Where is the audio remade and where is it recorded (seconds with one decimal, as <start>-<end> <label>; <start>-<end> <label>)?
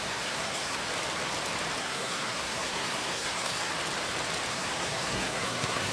0.0-0.8 remade; 0.8-1.8 recorded; 1.8-3.7 remade; 3.7-4.5 recorded; 4.5-5.9 remade